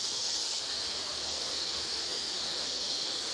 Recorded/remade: remade